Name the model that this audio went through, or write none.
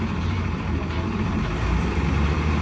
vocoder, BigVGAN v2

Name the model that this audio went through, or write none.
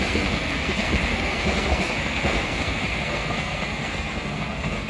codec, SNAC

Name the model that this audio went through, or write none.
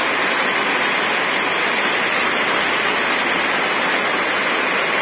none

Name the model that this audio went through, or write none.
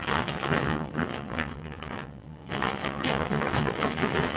vocoder, WaveNeXt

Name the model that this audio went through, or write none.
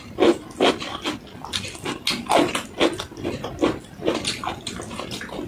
none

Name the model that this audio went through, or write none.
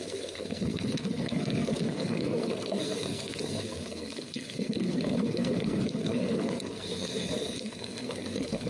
codec, SNAC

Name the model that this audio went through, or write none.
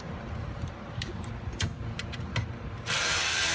vocoder, BigVGAN v2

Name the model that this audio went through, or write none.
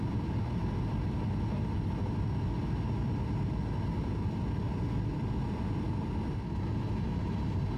none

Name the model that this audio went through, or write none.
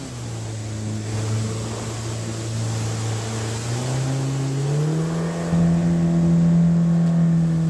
none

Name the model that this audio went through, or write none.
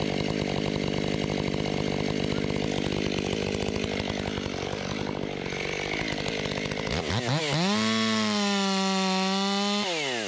none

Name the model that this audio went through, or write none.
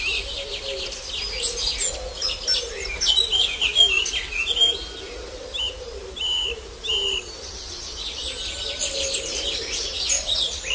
none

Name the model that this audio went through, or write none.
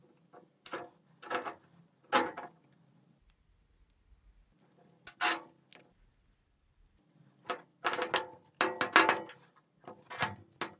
none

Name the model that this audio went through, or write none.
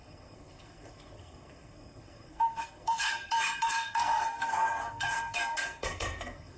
codec, SNAC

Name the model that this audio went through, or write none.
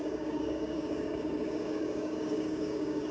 codec, DAC